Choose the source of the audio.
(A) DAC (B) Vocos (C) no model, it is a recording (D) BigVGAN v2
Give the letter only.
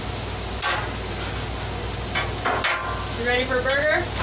C